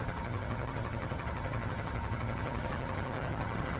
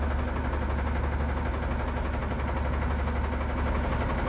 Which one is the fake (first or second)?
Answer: first